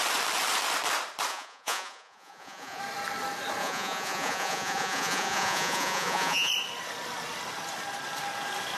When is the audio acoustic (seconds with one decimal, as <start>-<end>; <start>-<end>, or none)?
0.0-1.3; 2.8-3.6; 6.5-8.8